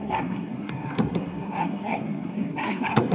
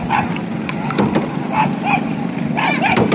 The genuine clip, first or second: second